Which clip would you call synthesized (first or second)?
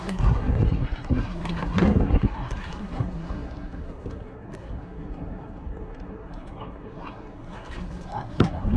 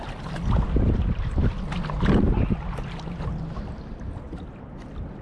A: first